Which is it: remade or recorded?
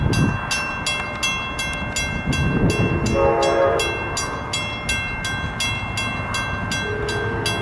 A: recorded